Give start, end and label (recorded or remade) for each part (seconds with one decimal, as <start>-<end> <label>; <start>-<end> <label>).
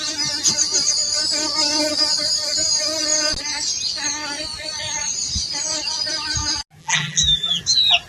0.0-6.8 recorded; 6.8-7.6 remade; 7.6-8.1 recorded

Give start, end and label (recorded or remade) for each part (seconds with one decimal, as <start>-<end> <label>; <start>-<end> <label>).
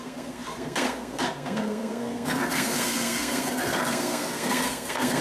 0.0-5.2 remade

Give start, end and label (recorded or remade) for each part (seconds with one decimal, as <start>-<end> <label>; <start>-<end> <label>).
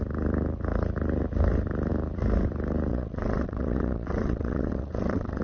0.0-2.9 recorded; 2.9-5.4 remade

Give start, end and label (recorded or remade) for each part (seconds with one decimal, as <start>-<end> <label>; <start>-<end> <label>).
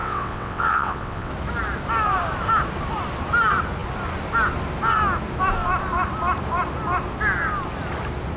0.0-1.3 remade; 1.3-8.4 recorded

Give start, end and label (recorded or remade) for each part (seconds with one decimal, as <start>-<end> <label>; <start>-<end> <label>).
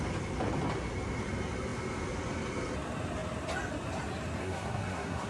0.0-4.4 recorded; 4.4-5.3 remade